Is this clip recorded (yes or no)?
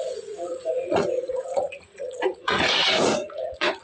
no